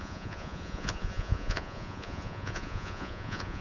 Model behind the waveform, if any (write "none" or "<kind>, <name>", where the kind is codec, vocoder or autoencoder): vocoder, Vocos